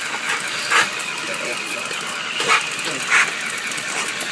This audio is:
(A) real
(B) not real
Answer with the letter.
A